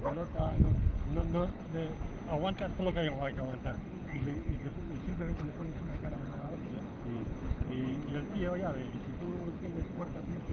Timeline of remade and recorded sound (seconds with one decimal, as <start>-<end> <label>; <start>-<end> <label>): 0.0-1.7 remade; 1.7-2.8 recorded; 2.8-8.1 remade; 8.1-8.9 recorded; 8.9-10.5 remade

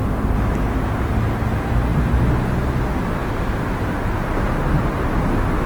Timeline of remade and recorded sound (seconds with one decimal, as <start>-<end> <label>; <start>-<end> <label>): 0.0-5.7 recorded

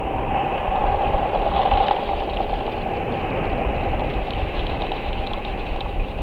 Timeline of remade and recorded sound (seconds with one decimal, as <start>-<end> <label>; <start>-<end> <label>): 0.0-4.1 recorded; 4.1-6.2 remade